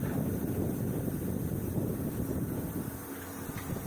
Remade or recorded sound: remade